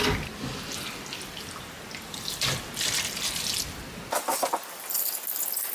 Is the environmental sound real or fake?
real